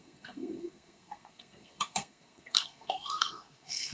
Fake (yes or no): yes